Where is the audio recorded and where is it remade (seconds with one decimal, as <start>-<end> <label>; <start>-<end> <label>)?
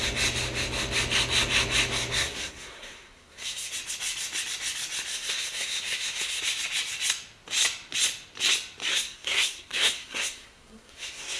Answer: 0.0-2.2 recorded; 2.2-3.7 remade; 3.7-5.1 recorded; 5.1-6.4 remade; 6.4-8.9 recorded; 8.9-11.4 remade